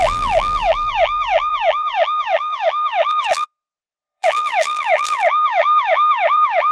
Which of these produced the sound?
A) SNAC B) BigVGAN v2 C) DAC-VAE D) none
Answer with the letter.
B